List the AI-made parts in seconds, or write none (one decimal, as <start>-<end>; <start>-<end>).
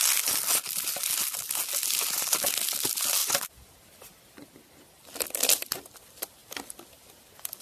none